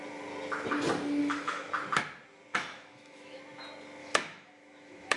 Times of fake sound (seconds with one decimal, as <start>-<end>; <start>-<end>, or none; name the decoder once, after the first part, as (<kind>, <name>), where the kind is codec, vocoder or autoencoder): 1.2-1.7 (autoencoder, DAC-VAE); 2.5-3.4; 4.0-5.2